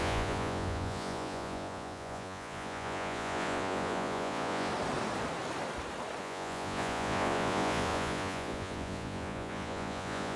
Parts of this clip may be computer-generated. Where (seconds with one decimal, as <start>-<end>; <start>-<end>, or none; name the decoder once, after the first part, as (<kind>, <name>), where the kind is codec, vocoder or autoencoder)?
0.0-4.7 (vocoder, Vocos); 6.2-10.4